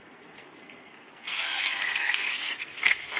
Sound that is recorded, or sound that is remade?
remade